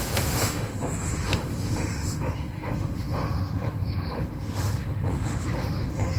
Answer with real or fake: fake